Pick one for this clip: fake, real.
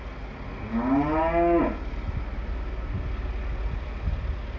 real